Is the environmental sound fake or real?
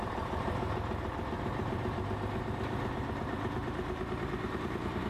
fake